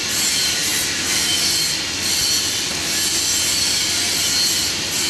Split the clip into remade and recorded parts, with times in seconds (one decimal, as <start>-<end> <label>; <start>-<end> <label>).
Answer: 0.0-5.1 recorded